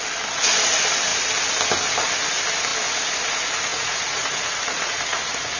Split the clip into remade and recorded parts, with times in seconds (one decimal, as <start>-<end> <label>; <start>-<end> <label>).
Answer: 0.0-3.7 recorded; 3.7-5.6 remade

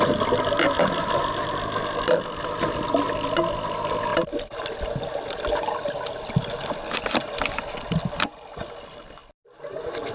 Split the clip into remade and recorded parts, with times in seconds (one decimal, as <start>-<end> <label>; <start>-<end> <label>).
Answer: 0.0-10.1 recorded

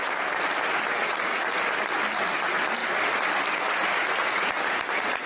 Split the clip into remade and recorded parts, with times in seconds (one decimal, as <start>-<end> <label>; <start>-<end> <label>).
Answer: 0.0-5.3 recorded

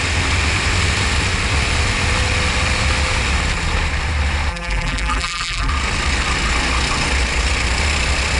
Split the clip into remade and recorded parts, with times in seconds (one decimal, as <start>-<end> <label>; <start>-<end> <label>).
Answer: 0.0-4.5 recorded; 4.5-5.7 remade; 5.7-8.4 recorded

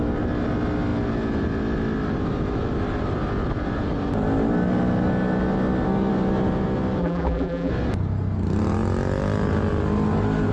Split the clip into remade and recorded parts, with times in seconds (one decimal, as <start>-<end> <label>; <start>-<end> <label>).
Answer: 0.0-7.0 recorded; 7.0-7.7 remade; 7.7-10.5 recorded

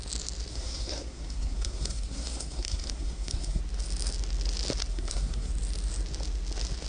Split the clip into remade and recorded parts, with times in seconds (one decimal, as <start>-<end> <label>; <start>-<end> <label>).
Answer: 0.0-0.5 recorded; 0.5-3.6 remade; 3.6-4.9 recorded; 4.9-5.5 remade; 5.5-6.9 recorded